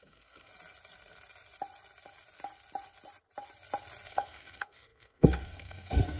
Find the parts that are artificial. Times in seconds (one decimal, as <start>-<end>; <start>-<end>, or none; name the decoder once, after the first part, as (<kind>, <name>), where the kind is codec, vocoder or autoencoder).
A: 0.0-0.5 (codec, SNAC); 4.1-6.2